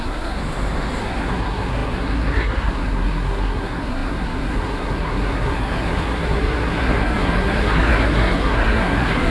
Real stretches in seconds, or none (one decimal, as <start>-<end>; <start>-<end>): 0.4-1.0